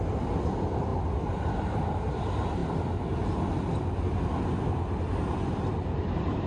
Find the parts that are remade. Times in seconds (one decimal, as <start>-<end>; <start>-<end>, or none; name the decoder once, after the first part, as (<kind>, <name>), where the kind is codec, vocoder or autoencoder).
none